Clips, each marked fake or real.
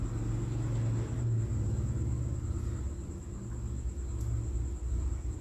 real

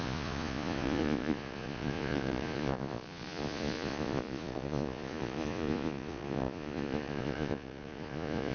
fake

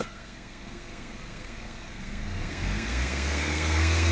fake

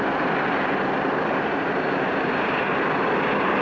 real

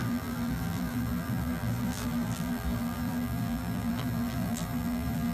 fake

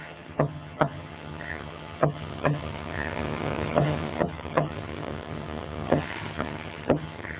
fake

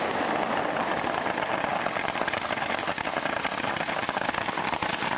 real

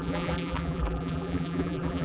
fake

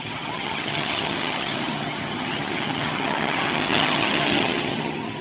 fake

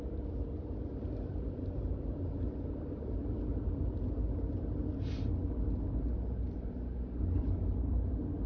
real